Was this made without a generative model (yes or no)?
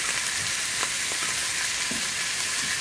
yes